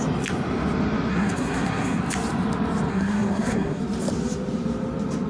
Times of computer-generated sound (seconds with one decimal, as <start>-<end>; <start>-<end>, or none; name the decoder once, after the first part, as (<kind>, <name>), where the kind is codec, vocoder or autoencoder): 1.1-2.0 (codec, SNAC); 2.9-3.8

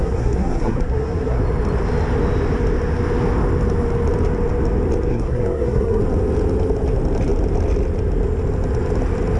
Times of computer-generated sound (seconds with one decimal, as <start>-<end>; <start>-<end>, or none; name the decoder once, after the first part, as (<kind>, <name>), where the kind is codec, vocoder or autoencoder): 0.0-1.4 (codec, SNAC); 5.1-6.0